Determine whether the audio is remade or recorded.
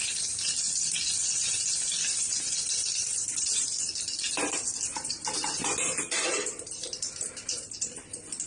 remade